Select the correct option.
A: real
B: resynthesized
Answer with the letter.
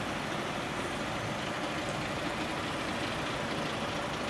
A